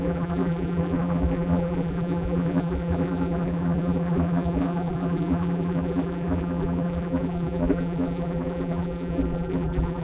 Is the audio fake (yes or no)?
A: yes